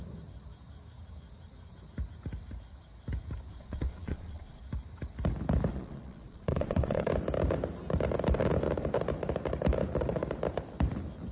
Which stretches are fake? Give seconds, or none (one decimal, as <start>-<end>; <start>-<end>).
3.5-4.6; 5.7-7.1